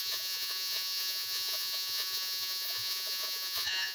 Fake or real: fake